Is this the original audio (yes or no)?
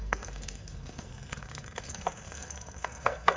no